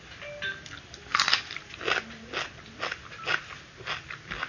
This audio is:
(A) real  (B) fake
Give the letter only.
A